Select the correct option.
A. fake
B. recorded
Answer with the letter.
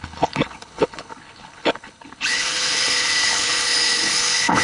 A